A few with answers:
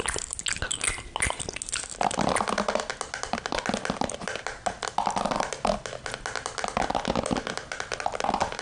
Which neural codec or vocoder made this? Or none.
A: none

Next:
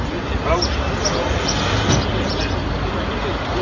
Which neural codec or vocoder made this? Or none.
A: none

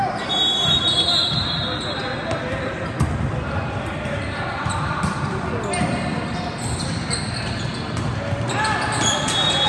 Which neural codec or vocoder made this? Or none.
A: none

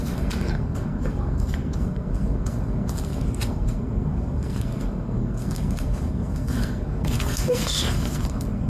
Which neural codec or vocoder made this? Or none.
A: codec, SNAC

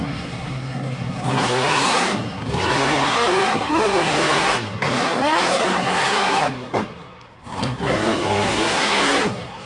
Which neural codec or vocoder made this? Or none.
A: codec, SNAC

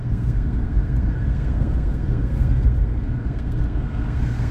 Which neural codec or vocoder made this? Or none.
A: codec, SNAC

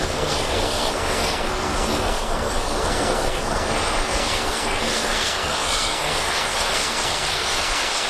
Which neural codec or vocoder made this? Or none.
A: codec, SNAC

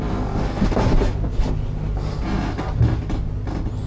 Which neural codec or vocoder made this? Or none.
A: none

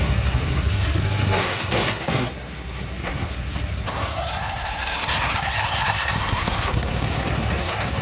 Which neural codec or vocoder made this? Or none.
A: codec, SNAC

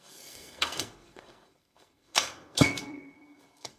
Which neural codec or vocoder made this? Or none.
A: codec, SNAC